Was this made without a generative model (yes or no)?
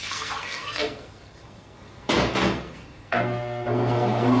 no